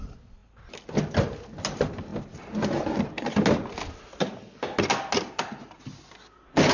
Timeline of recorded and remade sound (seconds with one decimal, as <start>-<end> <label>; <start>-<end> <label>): 0.0-6.7 recorded